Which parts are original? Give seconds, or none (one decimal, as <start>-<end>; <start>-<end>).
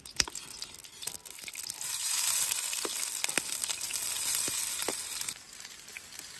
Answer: 0.0-6.4